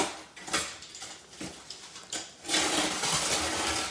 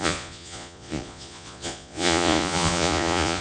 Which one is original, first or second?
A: first